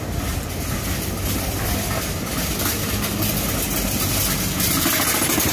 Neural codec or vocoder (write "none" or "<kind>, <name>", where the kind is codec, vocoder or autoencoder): none